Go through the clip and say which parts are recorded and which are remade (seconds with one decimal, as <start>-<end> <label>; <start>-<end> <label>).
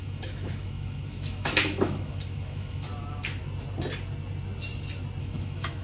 0.0-2.9 remade; 2.9-5.2 recorded; 5.2-5.8 remade